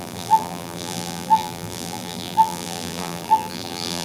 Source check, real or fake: fake